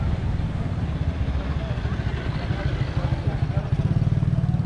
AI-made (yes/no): no